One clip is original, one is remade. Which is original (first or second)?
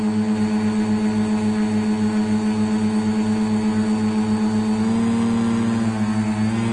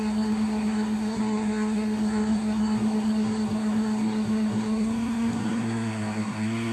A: first